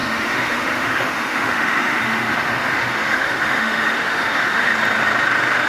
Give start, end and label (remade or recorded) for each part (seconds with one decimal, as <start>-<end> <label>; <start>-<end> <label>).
0.0-4.7 remade; 4.7-5.7 recorded